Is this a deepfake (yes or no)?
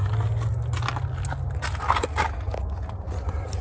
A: no